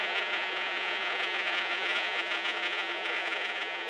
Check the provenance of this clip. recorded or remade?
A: remade